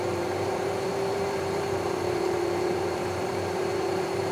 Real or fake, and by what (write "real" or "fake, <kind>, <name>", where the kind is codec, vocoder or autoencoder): fake, vocoder, BigVGAN v2